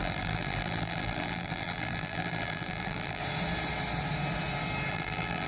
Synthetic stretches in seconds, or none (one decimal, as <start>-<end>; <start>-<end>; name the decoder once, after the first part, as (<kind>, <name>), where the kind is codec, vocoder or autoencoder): 0.0-3.2 (vocoder, BigVGAN v2); 4.9-5.5